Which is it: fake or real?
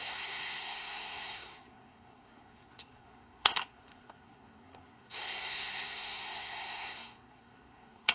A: fake